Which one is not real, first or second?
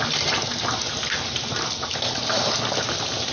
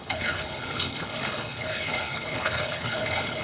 second